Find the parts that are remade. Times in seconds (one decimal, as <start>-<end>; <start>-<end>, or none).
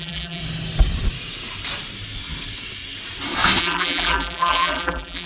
0.0-0.4; 3.6-5.3